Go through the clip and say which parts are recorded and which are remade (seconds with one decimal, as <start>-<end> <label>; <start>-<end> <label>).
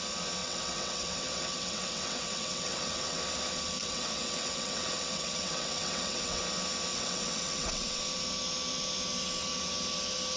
0.0-0.4 recorded; 0.4-3.2 remade; 3.2-3.8 recorded; 3.8-6.4 remade; 6.4-6.9 recorded; 6.9-8.0 remade; 8.0-10.4 recorded